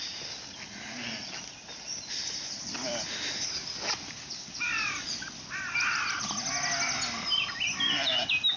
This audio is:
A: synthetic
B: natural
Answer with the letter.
B